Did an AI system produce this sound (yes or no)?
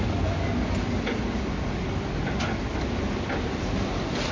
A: no